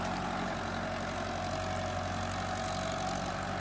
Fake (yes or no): no